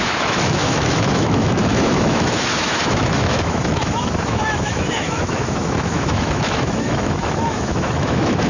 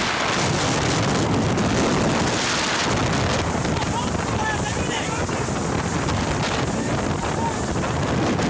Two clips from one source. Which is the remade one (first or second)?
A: first